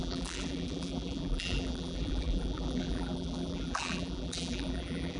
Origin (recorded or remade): remade